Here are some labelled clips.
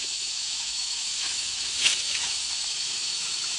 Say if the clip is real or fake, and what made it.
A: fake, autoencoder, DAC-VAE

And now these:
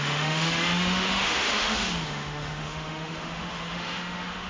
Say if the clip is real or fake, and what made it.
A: fake, autoencoder, DAC-VAE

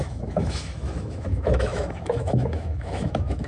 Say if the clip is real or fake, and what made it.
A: fake, autoencoder, DAC-VAE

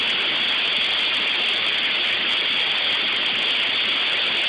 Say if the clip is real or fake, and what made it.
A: real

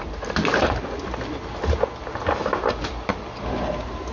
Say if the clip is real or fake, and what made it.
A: real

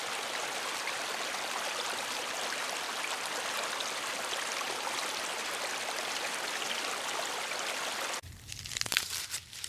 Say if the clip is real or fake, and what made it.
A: real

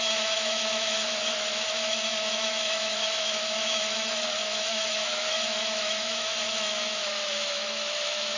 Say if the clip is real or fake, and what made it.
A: fake, autoencoder, DAC-VAE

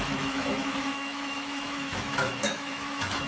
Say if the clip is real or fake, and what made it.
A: fake, autoencoder, DAC-VAE